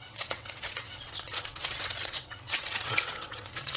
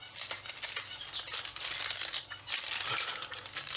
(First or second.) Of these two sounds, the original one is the second